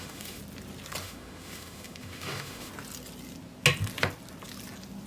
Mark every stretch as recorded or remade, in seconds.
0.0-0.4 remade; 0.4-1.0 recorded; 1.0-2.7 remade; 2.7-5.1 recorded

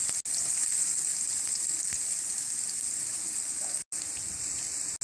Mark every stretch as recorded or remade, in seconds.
0.0-5.0 recorded

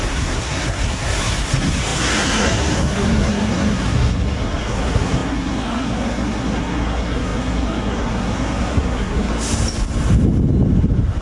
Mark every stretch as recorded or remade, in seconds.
0.0-9.3 remade; 9.3-11.2 recorded

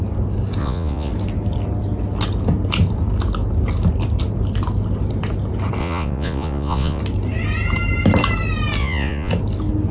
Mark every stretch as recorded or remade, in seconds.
0.0-0.6 recorded; 0.6-1.1 remade; 1.1-5.8 recorded; 5.8-7.0 remade; 7.0-8.8 recorded; 8.8-9.3 remade; 9.3-9.9 recorded

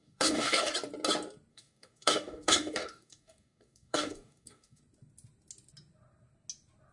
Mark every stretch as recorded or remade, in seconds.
0.0-0.7 remade; 0.7-1.5 recorded; 1.5-4.8 remade; 4.8-6.9 recorded